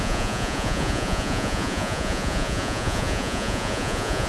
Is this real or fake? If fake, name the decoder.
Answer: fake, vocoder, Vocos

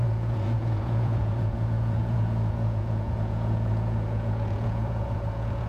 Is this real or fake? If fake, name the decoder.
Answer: fake, vocoder, Vocos